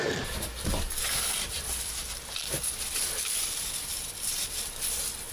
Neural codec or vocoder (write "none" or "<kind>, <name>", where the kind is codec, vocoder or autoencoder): vocoder, BigVGAN v2